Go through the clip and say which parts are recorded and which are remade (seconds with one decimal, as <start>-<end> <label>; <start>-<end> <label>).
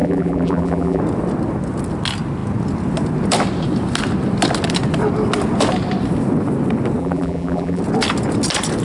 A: 0.0-1.0 remade; 1.0-7.0 recorded; 7.0-7.8 remade; 7.8-8.8 recorded